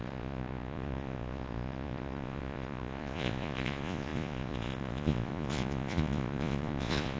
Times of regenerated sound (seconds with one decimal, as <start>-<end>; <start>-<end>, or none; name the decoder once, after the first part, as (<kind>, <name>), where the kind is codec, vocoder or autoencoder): 0.0-7.2 (vocoder, Vocos)